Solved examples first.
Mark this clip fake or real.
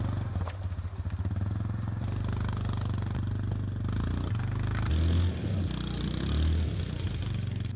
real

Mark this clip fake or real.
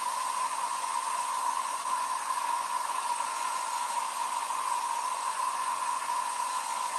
fake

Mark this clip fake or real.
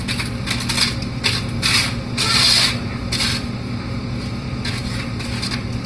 real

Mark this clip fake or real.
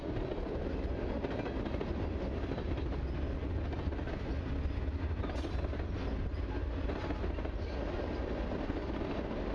real